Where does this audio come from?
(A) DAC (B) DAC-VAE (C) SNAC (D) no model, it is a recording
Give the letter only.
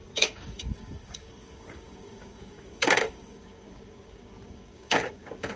A